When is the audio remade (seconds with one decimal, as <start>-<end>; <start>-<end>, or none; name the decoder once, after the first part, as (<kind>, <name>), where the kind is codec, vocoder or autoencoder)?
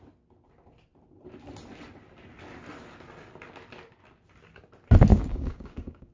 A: 5.1-6.1 (codec, DAC)